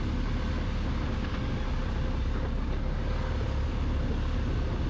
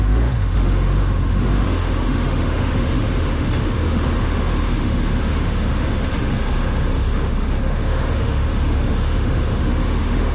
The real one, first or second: first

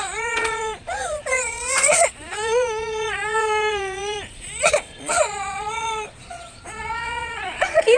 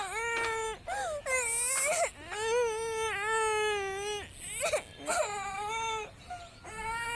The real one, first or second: second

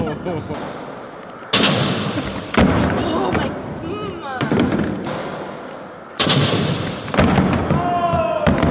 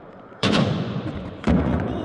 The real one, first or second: first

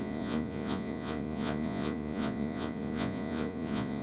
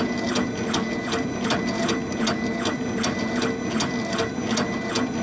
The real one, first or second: second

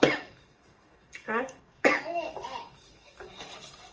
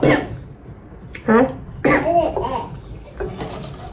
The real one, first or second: second